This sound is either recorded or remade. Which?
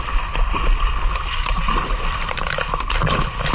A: recorded